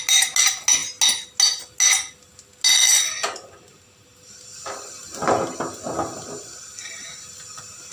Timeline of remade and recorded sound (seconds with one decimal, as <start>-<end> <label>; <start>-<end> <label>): 0.0-7.9 recorded